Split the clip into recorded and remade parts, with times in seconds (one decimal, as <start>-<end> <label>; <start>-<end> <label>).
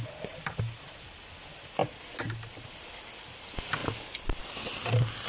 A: 0.0-5.3 recorded